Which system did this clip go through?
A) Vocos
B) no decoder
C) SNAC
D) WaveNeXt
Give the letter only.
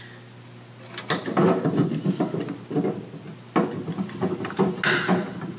B